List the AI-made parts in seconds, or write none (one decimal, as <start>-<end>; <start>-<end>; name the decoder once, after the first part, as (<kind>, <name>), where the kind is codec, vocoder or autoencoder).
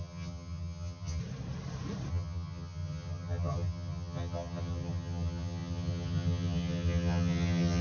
0.0-1.2 (vocoder, HiFi-GAN); 2.1-7.8